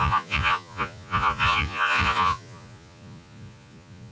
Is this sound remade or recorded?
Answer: remade